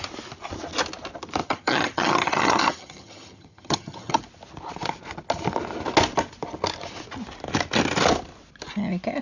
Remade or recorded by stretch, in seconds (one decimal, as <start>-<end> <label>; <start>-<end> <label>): 0.0-1.4 recorded; 1.4-4.2 remade; 4.2-9.2 recorded